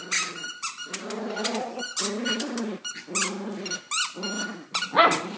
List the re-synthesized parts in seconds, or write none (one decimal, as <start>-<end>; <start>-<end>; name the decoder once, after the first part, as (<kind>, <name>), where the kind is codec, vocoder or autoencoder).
none